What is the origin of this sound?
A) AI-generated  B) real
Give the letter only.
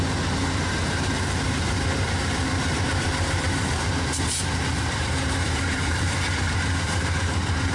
A